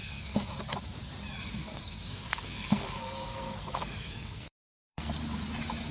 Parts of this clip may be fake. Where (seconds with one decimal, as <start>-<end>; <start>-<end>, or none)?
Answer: 0.0-0.5; 1.6-5.1